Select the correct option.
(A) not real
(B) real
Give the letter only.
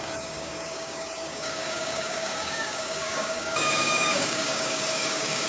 A